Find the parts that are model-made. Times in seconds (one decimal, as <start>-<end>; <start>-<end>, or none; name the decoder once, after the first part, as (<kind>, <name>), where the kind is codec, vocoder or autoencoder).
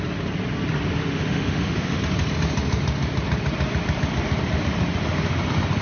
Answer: 1.0-2.0 (autoencoder, DAC-VAE)